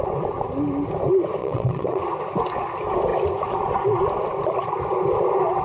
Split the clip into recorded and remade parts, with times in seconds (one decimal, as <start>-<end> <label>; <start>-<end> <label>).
0.0-1.4 recorded; 1.4-2.0 remade; 2.0-5.6 recorded